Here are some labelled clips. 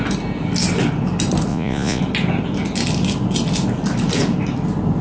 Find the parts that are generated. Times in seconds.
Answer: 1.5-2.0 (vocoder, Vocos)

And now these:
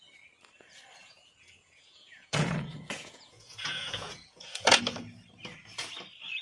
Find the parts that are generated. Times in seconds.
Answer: 1.0-4.8 (vocoder, Vocos)